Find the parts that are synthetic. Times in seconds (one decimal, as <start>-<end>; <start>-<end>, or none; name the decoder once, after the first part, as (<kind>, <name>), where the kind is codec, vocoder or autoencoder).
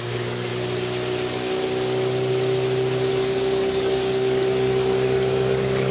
0.0-0.5 (codec, DAC); 3.1-5.9